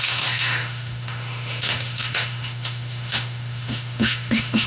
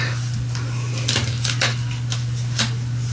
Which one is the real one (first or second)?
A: second